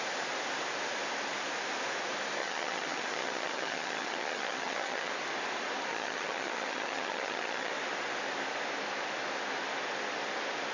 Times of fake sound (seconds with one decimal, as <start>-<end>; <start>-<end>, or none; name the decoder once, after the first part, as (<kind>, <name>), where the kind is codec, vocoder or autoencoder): 2.4-5.1 (vocoder, HiFi-GAN); 5.9-7.7